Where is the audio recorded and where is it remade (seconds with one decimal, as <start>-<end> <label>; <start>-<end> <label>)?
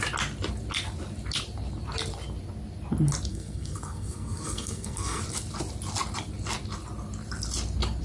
0.0-3.3 recorded; 3.3-5.2 remade; 5.2-8.0 recorded